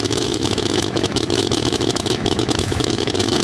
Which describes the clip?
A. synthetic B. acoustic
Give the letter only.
A